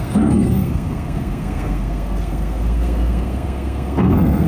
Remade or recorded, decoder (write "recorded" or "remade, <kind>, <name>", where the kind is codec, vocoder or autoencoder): remade, codec, SNAC